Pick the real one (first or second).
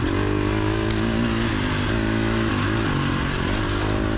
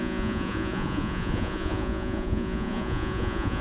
first